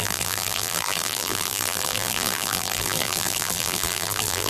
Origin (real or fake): fake